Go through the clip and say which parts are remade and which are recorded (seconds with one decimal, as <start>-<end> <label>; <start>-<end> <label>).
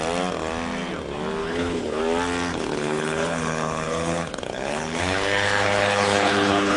0.0-1.4 recorded; 1.4-2.0 remade; 2.0-2.5 recorded; 2.5-6.8 remade